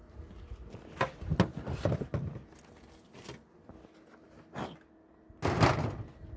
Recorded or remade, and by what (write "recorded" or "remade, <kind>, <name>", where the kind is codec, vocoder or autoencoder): recorded